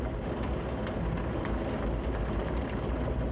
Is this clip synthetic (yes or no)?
no